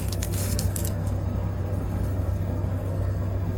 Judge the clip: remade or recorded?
remade